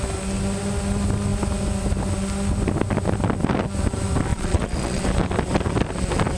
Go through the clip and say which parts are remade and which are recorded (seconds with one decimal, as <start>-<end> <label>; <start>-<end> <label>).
0.0-4.3 recorded; 4.3-5.0 remade; 5.0-6.4 recorded